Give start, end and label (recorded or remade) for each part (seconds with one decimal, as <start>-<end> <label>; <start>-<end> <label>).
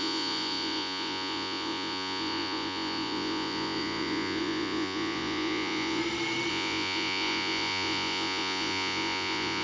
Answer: 0.0-6.0 remade; 6.0-6.5 recorded; 6.5-9.6 remade